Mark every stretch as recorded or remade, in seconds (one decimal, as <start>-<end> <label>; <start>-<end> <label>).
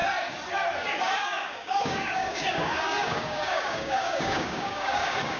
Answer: 0.0-1.0 recorded; 1.0-5.4 remade